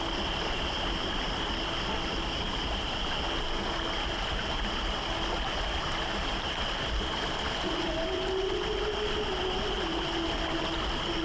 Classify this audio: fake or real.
real